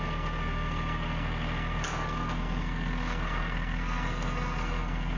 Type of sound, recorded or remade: remade